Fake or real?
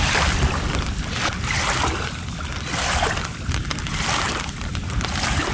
real